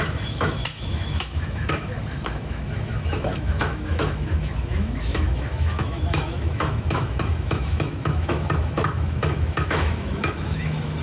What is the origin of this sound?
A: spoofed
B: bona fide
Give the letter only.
A